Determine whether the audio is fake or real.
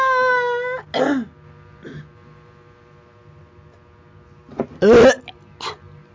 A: real